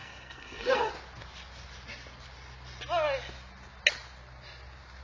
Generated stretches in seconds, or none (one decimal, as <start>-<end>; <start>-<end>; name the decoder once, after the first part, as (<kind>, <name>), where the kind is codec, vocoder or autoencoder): 0.0-0.9 (codec, SNAC)